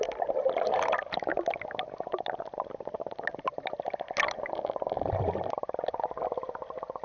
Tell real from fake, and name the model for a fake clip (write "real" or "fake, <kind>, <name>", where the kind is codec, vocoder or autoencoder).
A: real